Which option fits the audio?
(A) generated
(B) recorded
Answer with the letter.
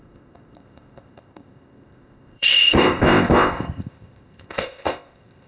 A